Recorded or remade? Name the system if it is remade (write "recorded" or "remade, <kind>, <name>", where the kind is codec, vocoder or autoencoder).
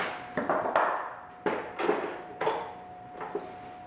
recorded